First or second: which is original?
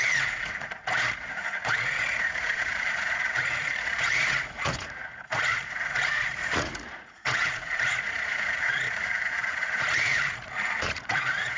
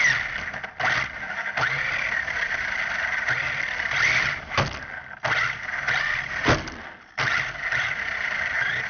second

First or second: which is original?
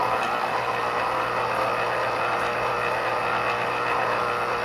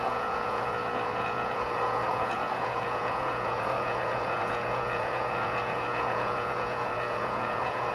first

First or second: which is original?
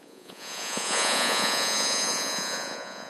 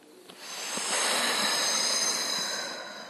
second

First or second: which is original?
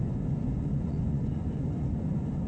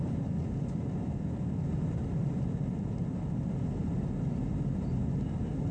second